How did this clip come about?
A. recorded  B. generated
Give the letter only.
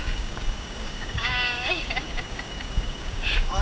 B